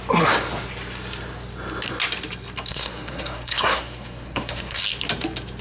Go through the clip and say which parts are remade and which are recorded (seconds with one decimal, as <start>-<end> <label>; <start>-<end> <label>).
0.0-2.7 recorded; 2.7-4.8 remade; 4.8-5.6 recorded